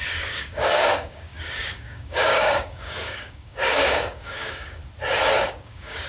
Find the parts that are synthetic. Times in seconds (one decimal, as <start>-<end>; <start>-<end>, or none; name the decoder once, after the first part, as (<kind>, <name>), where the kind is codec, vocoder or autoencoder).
0.0-4.8 (codec, DAC); 5.5-6.1